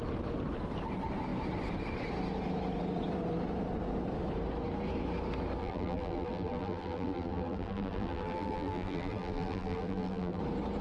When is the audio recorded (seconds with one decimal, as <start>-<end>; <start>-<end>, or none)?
0.0-5.6; 10.4-10.8